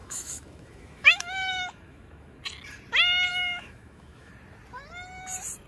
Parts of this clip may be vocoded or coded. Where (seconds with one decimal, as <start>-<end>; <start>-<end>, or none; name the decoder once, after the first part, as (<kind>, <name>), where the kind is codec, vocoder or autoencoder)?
0.0-2.4 (autoencoder, DAC-VAE); 3.3-4.3